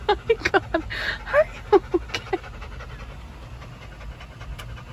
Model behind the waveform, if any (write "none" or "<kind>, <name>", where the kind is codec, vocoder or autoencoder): none